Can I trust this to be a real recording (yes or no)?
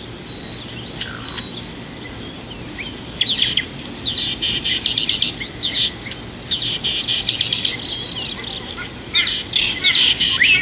yes